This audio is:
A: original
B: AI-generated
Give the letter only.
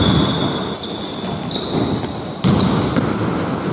A